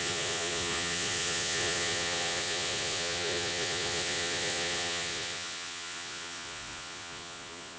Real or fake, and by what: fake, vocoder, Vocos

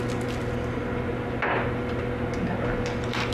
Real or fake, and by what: real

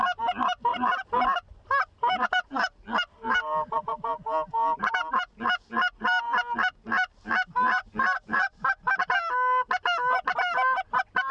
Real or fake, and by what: real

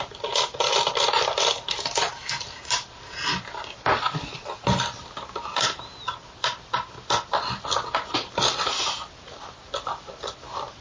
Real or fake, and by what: real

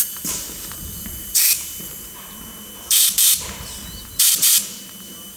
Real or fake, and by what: fake, vocoder, BigVGAN v2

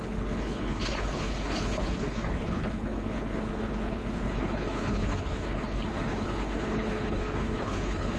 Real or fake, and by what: fake, codec, HILCodec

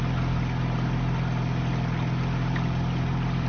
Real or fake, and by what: real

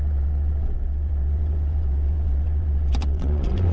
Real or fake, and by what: fake, vocoder, WaveNeXt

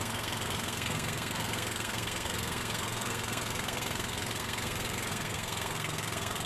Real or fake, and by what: fake, codec, SNAC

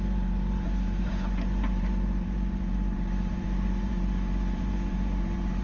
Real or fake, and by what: fake, vocoder, BigVGAN v2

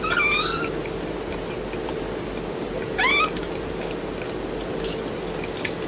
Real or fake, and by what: real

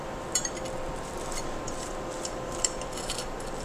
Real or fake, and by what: fake, vocoder, BigVGAN v2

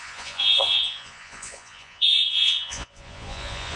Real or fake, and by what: fake, vocoder, Vocos